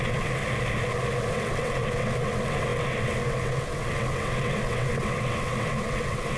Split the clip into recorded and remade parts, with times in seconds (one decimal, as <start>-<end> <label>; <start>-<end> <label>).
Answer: 0.0-0.4 remade; 0.4-1.3 recorded; 1.3-6.4 remade